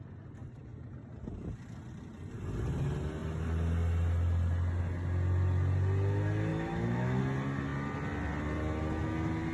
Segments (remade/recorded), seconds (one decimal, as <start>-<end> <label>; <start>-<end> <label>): 0.0-6.5 recorded; 6.5-7.2 remade; 7.2-9.5 recorded

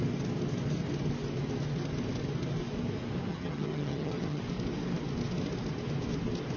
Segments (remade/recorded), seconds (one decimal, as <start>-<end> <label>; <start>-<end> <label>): 0.0-3.3 recorded; 3.3-4.4 remade; 4.4-6.6 recorded

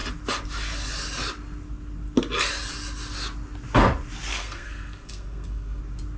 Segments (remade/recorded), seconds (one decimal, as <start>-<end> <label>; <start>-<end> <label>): 0.0-4.3 recorded; 4.3-5.8 remade; 5.8-6.2 recorded

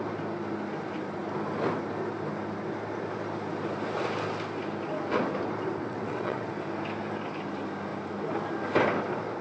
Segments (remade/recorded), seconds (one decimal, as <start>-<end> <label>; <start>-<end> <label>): 0.0-5.8 recorded; 5.8-6.5 remade; 6.5-9.4 recorded

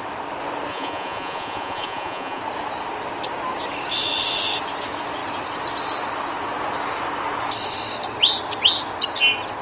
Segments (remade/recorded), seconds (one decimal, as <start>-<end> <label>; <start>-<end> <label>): 0.0-0.7 recorded; 0.7-2.4 remade; 2.4-9.6 recorded

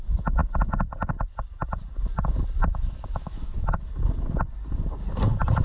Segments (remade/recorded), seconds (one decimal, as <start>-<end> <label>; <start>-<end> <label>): 0.0-2.7 recorded; 2.7-3.9 remade; 3.9-5.6 recorded

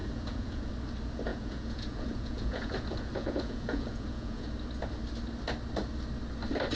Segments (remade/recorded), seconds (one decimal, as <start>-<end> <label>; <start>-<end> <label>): 0.0-0.7 remade; 0.7-1.3 recorded; 1.3-4.5 remade; 4.5-6.8 recorded

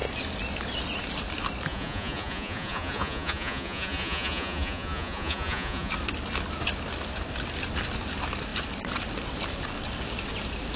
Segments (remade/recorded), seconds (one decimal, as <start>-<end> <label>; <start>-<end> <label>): 0.0-1.7 recorded; 1.7-5.9 remade; 5.9-10.8 recorded